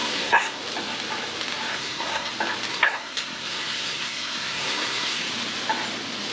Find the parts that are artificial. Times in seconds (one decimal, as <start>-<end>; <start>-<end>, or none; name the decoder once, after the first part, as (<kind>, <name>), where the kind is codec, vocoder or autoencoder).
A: 0.0-0.6 (codec, SNAC); 1.7-2.3; 2.7-5.3

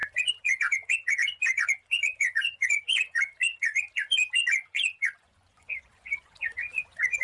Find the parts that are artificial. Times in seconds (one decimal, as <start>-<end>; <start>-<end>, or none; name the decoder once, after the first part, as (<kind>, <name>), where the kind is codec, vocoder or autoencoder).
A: 0.0-7.2 (vocoder, Vocos)

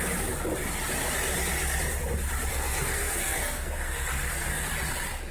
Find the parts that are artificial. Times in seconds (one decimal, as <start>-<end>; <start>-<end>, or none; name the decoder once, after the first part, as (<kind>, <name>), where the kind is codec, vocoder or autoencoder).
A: 2.5-4.7 (codec, SNAC)

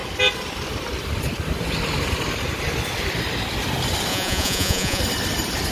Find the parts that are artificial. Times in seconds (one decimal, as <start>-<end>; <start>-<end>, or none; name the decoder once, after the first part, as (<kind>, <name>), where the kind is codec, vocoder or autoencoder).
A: 4.1-5.0 (vocoder, Vocos)